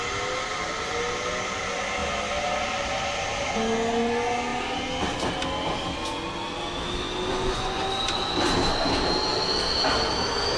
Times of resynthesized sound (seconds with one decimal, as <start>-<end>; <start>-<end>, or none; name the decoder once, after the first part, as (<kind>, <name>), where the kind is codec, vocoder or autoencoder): 7.3-7.8 (vocoder, Vocos)